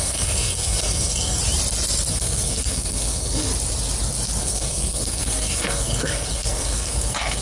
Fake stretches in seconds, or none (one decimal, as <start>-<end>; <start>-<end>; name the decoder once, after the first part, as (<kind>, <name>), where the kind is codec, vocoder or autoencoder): 0.0-1.4 (codec, SNAC); 2.1-3.5; 4.4-7.4